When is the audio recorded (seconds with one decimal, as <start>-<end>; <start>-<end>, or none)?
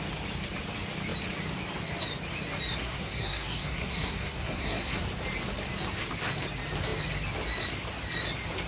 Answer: 0.0-2.8; 5.0-8.7